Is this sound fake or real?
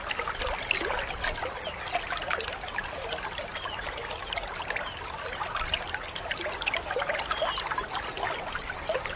real